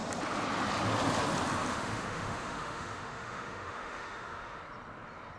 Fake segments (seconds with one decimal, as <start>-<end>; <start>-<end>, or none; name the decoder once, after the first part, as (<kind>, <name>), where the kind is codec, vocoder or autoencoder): 1.7-4.6 (autoencoder, DAC-VAE)